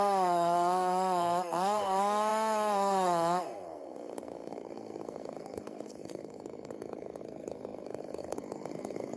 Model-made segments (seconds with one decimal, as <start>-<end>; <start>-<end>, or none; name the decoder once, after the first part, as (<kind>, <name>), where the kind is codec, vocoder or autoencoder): 0.0-9.2 (codec, SNAC)